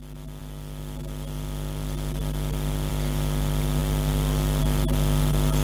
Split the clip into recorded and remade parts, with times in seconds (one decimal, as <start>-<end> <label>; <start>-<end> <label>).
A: 0.0-5.6 recorded